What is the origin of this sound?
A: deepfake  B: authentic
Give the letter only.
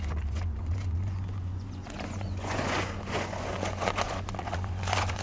A